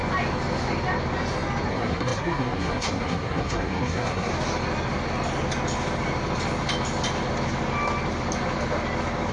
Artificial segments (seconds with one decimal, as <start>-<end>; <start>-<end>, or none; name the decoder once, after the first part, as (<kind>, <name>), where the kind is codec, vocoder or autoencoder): 1.7-4.3 (codec, SNAC)